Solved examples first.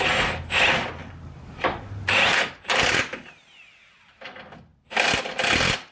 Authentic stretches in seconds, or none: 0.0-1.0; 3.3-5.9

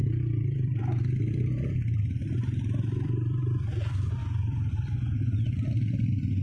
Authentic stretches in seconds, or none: 4.2-4.7

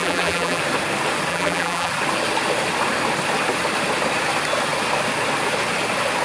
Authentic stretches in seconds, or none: 0.6-1.3; 1.9-6.2